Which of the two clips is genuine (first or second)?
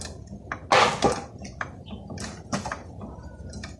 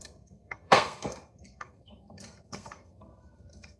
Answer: first